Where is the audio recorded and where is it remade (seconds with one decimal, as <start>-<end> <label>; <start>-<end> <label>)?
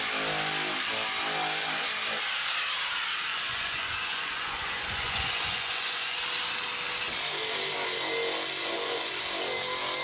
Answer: 0.0-3.3 recorded; 3.3-6.2 remade; 6.2-8.6 recorded; 8.6-9.2 remade; 9.2-10.0 recorded